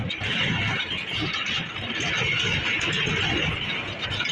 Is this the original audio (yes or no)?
yes